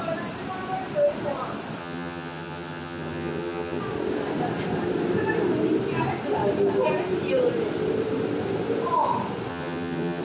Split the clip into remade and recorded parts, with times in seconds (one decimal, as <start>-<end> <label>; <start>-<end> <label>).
0.0-1.8 recorded; 1.8-3.8 remade; 3.8-9.5 recorded; 9.5-10.2 remade